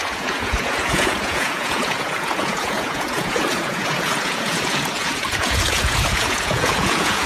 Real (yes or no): no